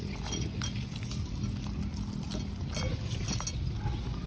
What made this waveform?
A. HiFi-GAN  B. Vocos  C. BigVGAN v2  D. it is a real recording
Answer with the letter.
D